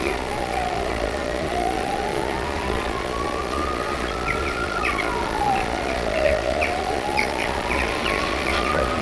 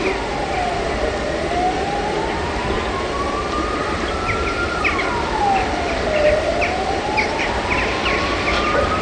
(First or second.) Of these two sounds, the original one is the second